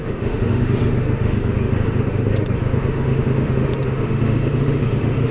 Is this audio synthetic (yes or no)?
yes